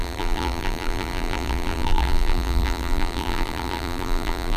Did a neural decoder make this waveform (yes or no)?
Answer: yes